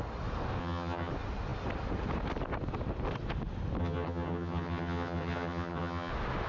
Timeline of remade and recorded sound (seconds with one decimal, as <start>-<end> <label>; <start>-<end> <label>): 0.0-0.6 recorded; 0.6-1.1 remade; 1.1-3.8 recorded; 3.8-6.1 remade; 6.1-6.5 recorded